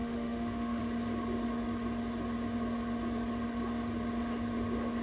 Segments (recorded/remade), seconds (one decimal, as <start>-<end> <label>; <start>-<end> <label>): 0.0-0.8 remade; 0.8-5.0 recorded